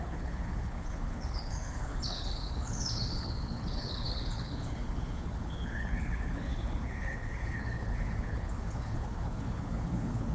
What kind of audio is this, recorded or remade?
remade